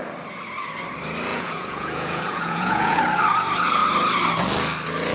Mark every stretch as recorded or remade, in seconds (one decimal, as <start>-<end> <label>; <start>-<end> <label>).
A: 0.0-1.3 recorded; 1.3-3.0 remade; 3.0-5.1 recorded